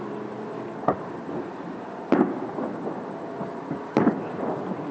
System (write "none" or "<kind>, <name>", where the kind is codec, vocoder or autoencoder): none